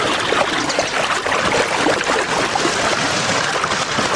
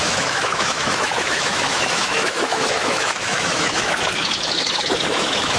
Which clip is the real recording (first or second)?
first